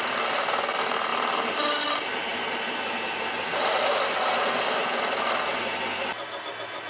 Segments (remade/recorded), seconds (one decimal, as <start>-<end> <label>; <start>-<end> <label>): 0.0-6.9 recorded